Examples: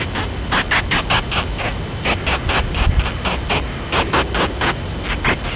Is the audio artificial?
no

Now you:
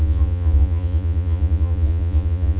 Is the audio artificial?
yes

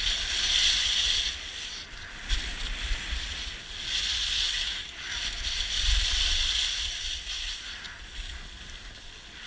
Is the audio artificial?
no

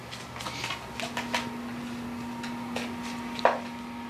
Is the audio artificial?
no